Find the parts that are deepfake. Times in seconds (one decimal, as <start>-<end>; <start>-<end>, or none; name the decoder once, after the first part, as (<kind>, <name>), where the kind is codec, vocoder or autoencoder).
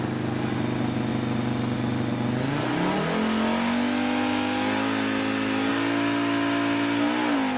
none